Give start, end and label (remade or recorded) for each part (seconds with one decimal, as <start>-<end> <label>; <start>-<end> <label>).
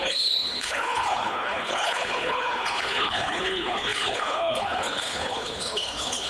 0.0-6.3 remade